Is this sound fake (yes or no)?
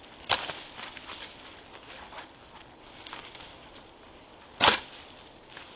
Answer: no